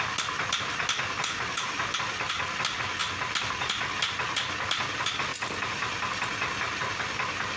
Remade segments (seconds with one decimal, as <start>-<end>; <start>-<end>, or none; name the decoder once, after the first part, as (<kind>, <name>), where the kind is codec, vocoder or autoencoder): none